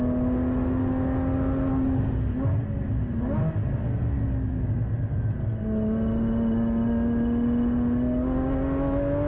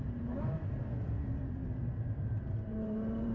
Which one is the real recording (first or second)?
first